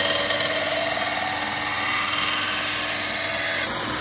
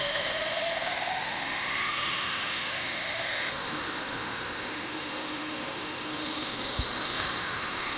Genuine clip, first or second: first